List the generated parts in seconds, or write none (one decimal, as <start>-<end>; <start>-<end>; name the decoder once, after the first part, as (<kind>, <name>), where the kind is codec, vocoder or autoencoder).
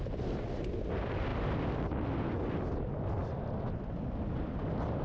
0.0-1.3 (vocoder, BigVGAN v2); 2.7-3.2; 4.6-5.0